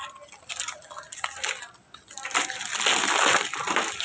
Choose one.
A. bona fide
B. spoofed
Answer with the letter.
A